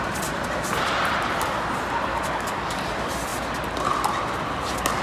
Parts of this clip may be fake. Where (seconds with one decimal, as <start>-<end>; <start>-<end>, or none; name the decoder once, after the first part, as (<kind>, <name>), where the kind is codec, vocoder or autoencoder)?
2.1-2.8 (codec, DAC)